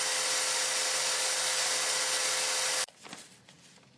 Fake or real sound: real